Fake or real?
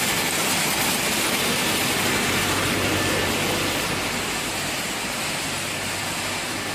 real